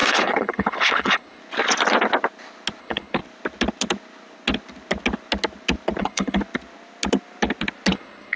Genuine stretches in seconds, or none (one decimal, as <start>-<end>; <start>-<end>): 1.4-2.8; 3.2-6.0; 6.4-7.9